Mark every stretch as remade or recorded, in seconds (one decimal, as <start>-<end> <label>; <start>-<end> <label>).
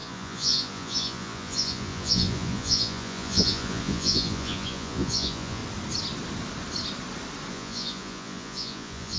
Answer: 0.0-5.6 remade; 5.6-7.5 recorded; 7.5-9.2 remade